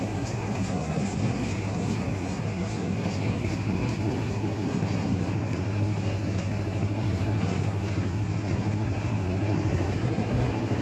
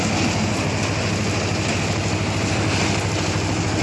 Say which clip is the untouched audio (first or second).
second